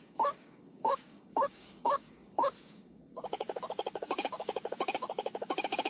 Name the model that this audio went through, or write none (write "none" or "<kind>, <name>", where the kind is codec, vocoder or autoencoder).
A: codec, DAC